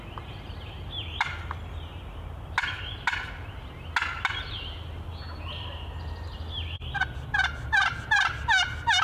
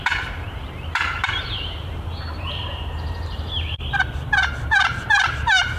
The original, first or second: first